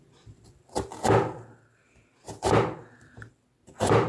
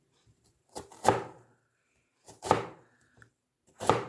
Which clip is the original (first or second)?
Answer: first